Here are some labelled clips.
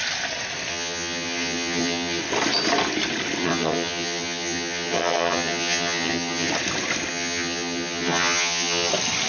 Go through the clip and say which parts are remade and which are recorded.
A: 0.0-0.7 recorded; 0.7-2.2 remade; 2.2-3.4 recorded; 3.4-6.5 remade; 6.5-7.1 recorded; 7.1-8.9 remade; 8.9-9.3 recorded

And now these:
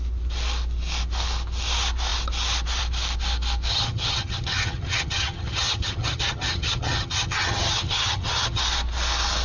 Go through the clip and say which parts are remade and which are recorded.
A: 0.0-3.7 recorded; 3.7-8.6 remade; 8.6-9.4 recorded

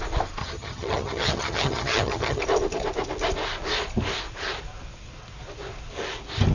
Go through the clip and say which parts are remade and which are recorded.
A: 0.0-0.4 recorded; 0.4-2.4 remade; 2.4-6.5 recorded

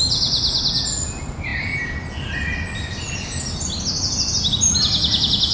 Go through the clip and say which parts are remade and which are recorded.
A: 0.0-5.5 recorded